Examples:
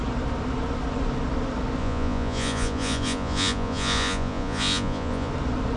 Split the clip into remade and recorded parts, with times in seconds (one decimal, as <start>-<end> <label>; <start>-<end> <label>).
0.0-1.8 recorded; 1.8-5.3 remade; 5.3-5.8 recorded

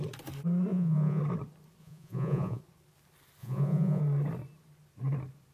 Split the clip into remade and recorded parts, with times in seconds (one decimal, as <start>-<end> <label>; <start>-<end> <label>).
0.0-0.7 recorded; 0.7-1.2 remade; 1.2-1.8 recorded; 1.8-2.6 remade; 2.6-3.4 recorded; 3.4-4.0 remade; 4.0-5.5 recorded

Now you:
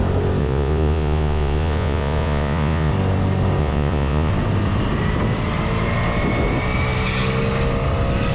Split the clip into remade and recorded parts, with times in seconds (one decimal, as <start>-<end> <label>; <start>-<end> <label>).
0.0-0.4 recorded; 0.4-2.9 remade; 2.9-3.6 recorded; 3.6-4.3 remade; 4.3-8.3 recorded

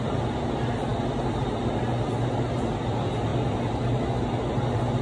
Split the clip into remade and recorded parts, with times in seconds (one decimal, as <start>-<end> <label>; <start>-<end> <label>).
0.0-5.0 recorded

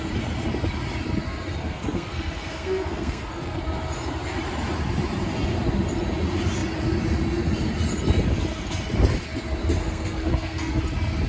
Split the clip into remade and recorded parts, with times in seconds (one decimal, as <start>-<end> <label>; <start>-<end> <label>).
0.0-1.6 recorded; 1.6-3.6 remade; 3.6-9.8 recorded; 9.8-10.8 remade; 10.8-11.3 recorded